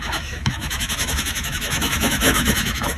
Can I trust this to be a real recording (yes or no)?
no